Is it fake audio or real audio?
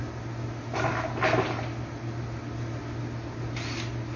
real